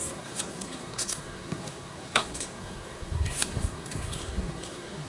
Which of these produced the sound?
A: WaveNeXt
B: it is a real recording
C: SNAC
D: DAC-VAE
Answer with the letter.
C